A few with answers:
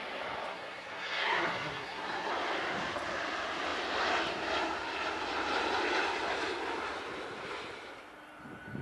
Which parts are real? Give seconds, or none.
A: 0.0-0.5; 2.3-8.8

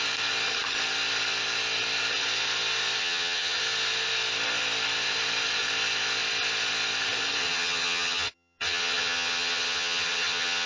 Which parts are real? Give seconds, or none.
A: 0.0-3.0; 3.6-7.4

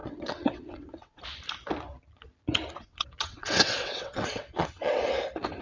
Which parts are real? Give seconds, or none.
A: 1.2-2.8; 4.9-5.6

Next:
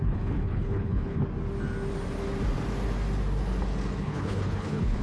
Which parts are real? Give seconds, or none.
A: 1.2-4.0

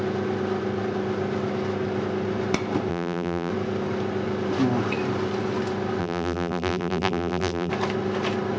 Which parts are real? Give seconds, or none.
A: 0.0-2.9; 3.5-6.0; 7.7-8.6